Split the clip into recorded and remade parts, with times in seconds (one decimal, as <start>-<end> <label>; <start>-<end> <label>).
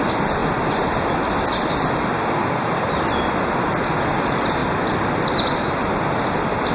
0.0-2.1 recorded; 2.1-2.9 remade; 2.9-6.7 recorded